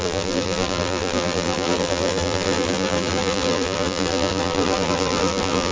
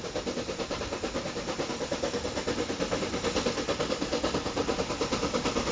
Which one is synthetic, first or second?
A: first